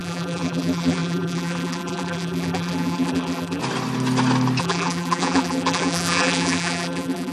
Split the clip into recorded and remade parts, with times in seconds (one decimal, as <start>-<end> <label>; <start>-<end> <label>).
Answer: 0.0-3.6 remade; 3.6-4.6 recorded; 4.6-7.3 remade